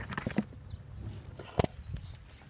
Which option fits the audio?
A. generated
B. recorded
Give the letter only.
B